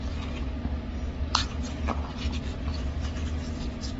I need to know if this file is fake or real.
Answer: real